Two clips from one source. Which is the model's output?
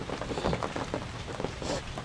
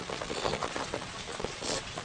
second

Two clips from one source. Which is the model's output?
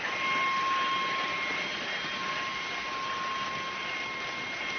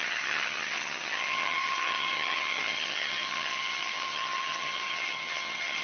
second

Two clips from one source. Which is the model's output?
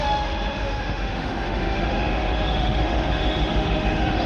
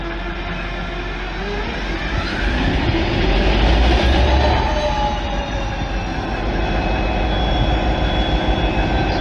first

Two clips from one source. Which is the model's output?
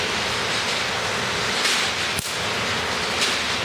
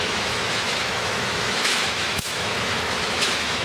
second